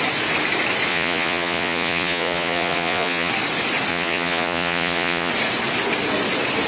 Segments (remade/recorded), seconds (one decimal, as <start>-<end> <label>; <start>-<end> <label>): 0.0-0.9 recorded; 0.9-3.3 remade; 3.3-3.9 recorded; 3.9-5.3 remade; 5.3-6.7 recorded